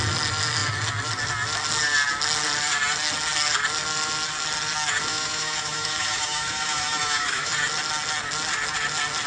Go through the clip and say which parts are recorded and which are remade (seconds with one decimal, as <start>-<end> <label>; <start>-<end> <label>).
0.0-5.1 recorded; 5.1-7.5 remade; 7.5-9.3 recorded